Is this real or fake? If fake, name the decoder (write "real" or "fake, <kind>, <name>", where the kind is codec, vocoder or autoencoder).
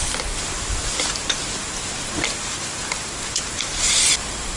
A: real